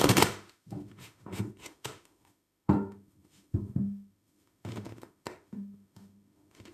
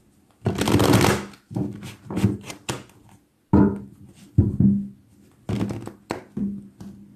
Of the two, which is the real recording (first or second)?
second